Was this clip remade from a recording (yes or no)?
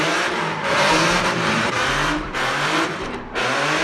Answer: yes